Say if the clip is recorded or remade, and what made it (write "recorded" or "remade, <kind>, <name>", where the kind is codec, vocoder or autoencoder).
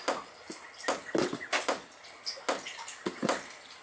recorded